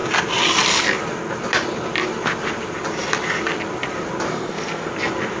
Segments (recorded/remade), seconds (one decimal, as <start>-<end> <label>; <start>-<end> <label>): 0.0-4.3 recorded; 4.3-4.9 remade; 4.9-5.4 recorded